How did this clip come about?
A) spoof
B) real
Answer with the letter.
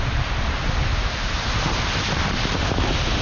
A